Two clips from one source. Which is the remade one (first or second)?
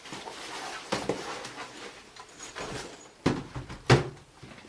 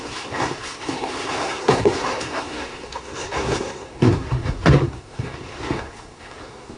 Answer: second